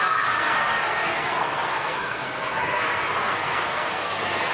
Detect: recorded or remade remade